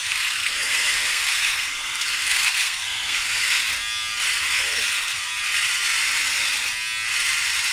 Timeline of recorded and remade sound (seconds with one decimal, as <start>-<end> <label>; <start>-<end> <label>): 0.0-3.6 remade; 3.6-4.4 recorded; 4.4-5.3 remade; 5.3-7.7 recorded